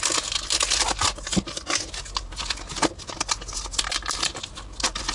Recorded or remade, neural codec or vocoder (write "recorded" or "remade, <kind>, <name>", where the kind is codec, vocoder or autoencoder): recorded